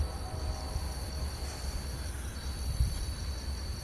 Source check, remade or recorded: remade